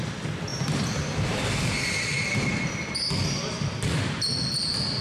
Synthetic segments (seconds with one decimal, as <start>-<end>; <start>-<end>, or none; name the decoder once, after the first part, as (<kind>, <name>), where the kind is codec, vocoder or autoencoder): 0.5-2.9 (vocoder, BigVGAN v2)